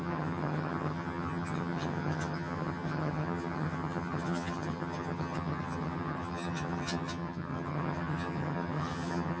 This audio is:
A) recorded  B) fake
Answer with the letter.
B